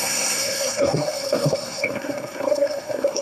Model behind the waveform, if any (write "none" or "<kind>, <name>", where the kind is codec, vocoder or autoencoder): codec, SNAC